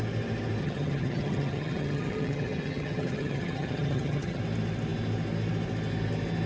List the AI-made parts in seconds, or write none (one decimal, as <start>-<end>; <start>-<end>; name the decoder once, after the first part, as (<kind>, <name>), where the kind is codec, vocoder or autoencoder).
0.6-4.4 (vocoder, HiFi-GAN)